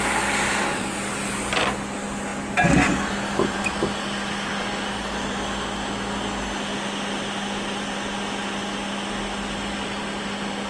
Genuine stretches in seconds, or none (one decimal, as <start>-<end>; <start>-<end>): 0.0-10.7